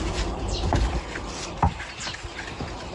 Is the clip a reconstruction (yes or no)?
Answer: no